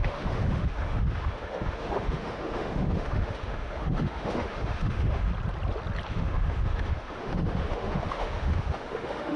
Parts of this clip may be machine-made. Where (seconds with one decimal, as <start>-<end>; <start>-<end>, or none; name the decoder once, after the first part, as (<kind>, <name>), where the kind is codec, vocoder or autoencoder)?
0.0-5.3 (autoencoder, DAC-VAE); 6.1-9.4